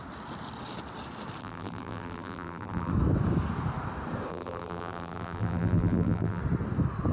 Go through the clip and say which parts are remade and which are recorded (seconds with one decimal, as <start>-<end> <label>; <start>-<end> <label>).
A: 0.0-1.4 recorded; 1.4-2.9 remade; 2.9-4.3 recorded; 4.3-6.4 remade; 6.4-7.1 recorded